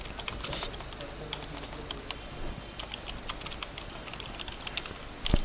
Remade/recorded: recorded